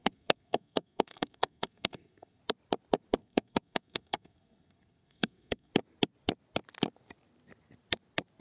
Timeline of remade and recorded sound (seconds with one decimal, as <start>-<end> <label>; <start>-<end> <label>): 0.0-2.4 remade; 2.4-3.2 recorded; 3.2-5.7 remade; 5.7-8.4 recorded